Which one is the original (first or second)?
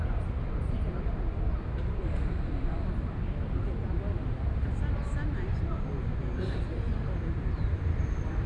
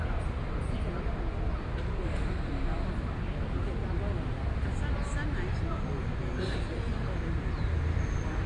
second